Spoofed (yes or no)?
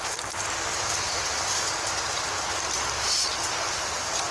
no